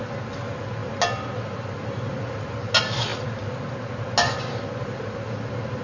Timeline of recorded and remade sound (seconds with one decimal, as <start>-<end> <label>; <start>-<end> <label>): 0.0-5.8 recorded